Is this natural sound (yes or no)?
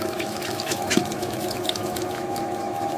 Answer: no